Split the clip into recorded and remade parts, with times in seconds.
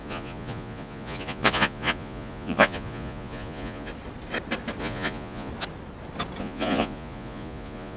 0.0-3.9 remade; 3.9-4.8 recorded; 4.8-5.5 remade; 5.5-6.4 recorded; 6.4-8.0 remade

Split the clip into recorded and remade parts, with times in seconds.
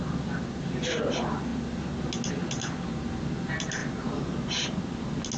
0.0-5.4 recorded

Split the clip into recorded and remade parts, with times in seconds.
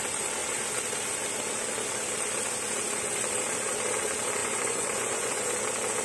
0.0-4.4 recorded; 4.4-5.5 remade; 5.5-6.0 recorded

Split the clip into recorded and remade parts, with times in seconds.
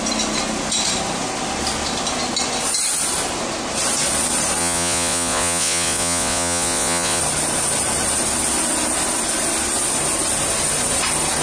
0.0-4.6 recorded; 4.6-7.2 remade; 7.2-11.4 recorded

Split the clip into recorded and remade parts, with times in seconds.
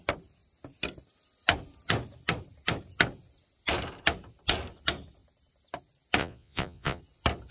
0.0-6.2 recorded; 6.2-7.0 remade; 7.0-7.5 recorded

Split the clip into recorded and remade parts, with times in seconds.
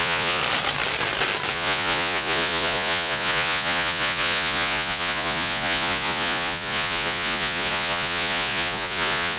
0.0-0.4 remade; 0.4-1.5 recorded; 1.5-9.4 remade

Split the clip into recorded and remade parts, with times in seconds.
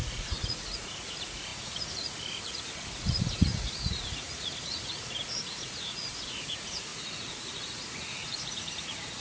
0.0-9.2 remade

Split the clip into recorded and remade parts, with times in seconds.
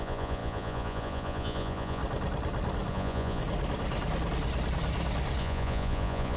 0.0-2.0 remade; 2.0-2.9 recorded; 2.9-3.4 remade; 3.4-5.4 recorded; 5.4-6.4 remade